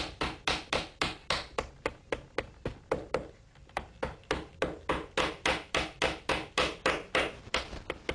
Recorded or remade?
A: recorded